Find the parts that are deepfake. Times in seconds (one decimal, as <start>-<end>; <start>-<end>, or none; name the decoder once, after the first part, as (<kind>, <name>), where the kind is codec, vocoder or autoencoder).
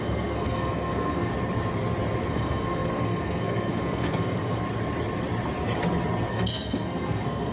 0.0-1.3 (codec, SNAC); 2.3-4.6; 6.3-7.5